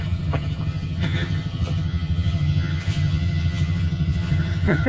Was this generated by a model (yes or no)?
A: yes